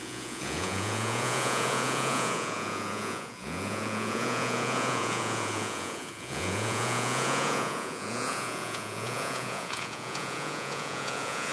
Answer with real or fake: fake